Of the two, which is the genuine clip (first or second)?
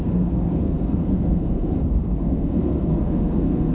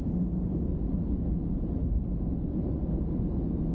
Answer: second